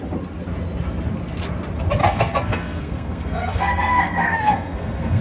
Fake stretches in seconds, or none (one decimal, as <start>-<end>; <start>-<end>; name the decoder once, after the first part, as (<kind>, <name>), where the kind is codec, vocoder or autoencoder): 2.0-5.2 (codec, SNAC)